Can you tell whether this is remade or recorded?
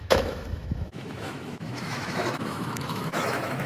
remade